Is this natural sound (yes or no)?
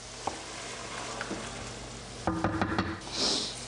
yes